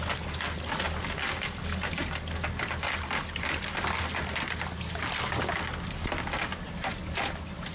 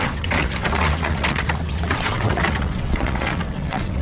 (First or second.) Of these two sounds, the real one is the first